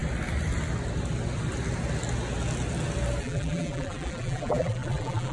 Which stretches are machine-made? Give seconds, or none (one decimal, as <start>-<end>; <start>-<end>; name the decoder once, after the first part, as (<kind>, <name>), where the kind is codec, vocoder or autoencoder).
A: 3.2-5.3 (vocoder, BigVGAN v2)